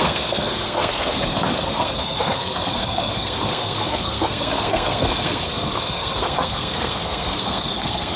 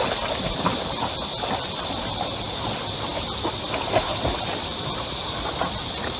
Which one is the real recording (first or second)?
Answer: second